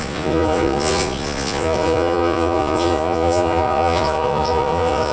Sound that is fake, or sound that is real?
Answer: fake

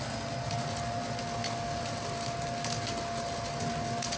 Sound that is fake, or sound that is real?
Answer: real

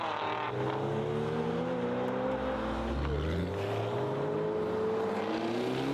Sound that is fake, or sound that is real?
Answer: real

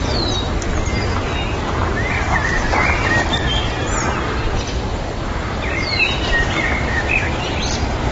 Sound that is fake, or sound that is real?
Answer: real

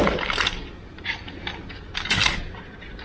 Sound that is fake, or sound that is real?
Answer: real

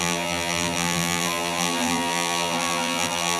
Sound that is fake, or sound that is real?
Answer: fake